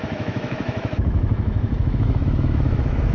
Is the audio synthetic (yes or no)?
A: yes